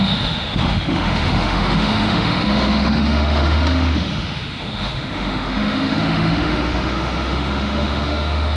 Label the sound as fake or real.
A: fake